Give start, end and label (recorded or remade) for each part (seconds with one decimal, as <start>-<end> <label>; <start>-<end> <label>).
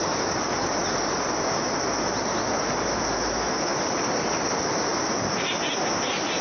0.0-6.4 recorded